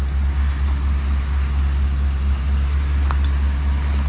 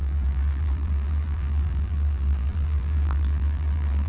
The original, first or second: first